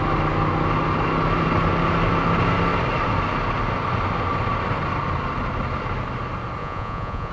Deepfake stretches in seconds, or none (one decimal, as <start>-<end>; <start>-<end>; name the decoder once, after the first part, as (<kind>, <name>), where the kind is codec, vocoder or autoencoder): 6.6-7.3 (vocoder, Vocos)